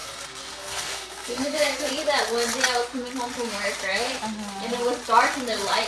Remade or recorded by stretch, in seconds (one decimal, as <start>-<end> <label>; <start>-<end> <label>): 0.0-1.9 remade; 1.9-5.9 recorded